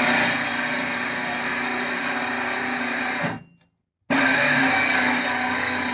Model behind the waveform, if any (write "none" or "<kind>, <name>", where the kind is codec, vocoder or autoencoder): none